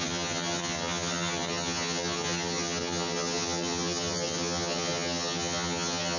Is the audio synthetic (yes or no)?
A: yes